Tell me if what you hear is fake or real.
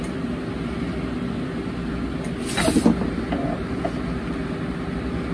real